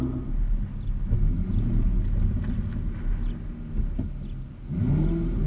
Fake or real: real